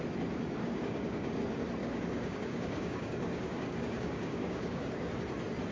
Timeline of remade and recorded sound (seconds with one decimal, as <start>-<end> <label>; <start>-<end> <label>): 0.0-0.6 recorded; 0.6-1.4 remade; 1.4-1.8 recorded; 1.8-5.1 remade; 5.1-5.7 recorded